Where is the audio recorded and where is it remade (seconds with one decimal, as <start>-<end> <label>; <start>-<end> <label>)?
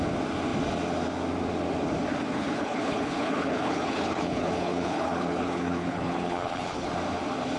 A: 0.0-2.3 recorded; 2.3-6.9 remade; 6.9-7.6 recorded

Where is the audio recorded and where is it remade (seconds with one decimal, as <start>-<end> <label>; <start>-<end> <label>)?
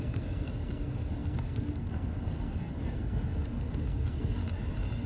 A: 0.0-4.4 remade; 4.4-5.1 recorded